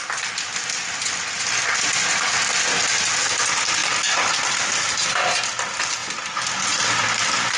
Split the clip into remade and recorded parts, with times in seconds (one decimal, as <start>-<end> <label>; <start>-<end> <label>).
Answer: 0.0-7.6 recorded